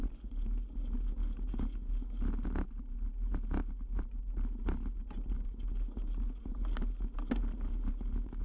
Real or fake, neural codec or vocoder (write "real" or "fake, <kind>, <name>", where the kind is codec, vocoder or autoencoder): real